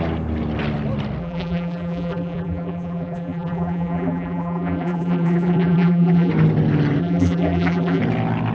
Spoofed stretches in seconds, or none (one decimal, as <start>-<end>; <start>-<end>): 1.2-6.3; 7.0-8.0